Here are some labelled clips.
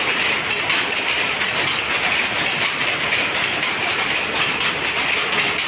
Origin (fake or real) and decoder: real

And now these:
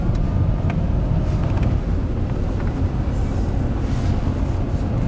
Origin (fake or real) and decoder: real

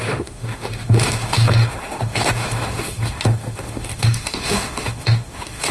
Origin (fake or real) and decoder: fake, autoencoder, DAC-VAE